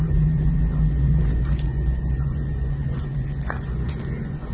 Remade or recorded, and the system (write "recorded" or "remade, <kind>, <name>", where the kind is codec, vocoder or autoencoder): remade, vocoder, Vocos